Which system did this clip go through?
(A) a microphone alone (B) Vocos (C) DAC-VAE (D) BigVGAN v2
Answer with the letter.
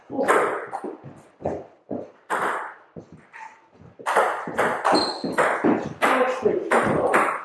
A